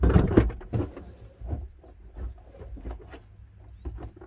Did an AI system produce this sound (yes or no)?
no